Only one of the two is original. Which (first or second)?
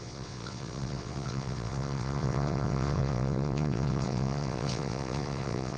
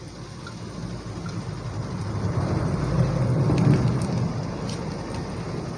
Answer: second